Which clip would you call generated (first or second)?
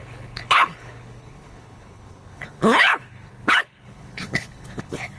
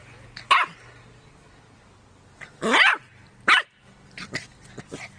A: first